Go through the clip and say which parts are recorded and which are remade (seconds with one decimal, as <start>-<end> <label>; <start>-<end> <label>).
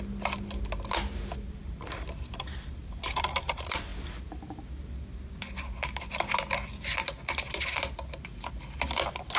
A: 0.0-9.4 recorded